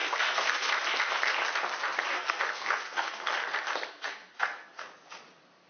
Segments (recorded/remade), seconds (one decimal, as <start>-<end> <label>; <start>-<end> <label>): 0.0-0.7 remade; 0.7-2.1 recorded; 2.1-3.3 remade; 3.3-3.9 recorded; 3.9-4.8 remade; 4.8-5.7 recorded